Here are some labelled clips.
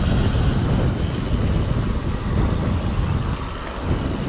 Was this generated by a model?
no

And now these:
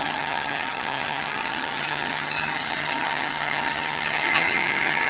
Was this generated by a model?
yes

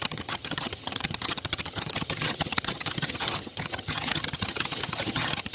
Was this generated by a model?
yes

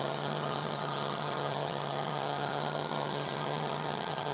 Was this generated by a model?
yes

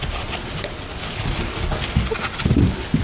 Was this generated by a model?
no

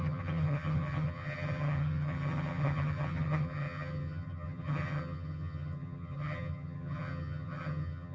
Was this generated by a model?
yes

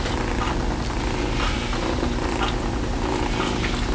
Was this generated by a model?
no